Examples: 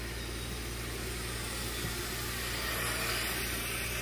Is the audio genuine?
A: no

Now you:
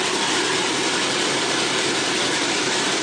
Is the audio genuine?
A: yes